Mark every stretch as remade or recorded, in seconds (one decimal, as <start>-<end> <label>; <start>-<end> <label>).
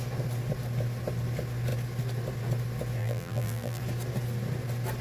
0.0-3.0 recorded; 3.0-3.8 remade; 3.8-5.0 recorded